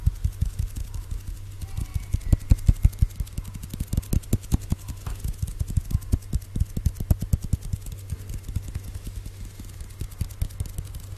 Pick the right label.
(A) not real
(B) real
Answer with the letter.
B